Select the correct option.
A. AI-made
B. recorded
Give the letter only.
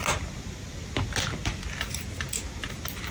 B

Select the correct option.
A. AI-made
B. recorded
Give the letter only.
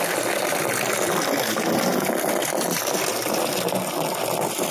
B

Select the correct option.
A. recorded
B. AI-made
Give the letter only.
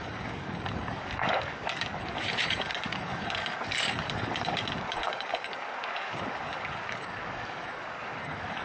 B